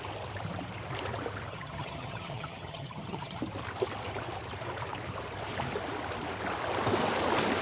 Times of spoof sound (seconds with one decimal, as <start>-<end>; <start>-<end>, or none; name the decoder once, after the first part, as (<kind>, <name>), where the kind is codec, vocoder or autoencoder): 1.5-3.4 (vocoder, HiFi-GAN)